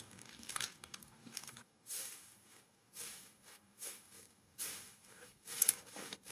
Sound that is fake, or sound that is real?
fake